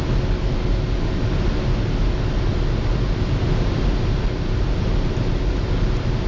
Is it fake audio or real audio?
real